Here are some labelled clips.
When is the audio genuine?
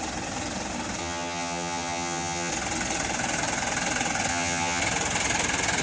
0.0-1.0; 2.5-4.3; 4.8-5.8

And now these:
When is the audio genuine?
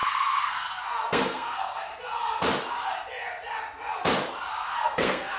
1.9-4.5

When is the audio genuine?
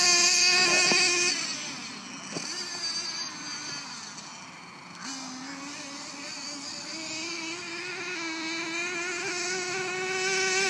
0.0-10.7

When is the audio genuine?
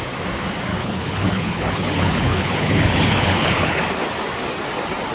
0.0-0.7; 3.8-5.1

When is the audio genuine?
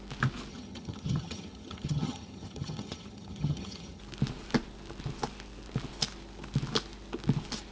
0.0-0.5; 4.0-7.7